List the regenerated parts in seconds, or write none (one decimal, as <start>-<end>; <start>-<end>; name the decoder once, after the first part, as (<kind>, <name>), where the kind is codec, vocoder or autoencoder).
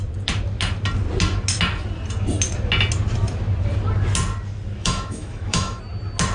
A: 4.8-5.8 (autoencoder, DAC-VAE)